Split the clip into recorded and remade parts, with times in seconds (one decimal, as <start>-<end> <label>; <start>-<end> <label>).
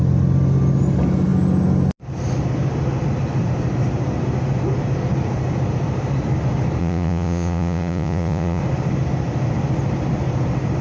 0.0-6.8 recorded; 6.8-8.6 remade; 8.6-10.8 recorded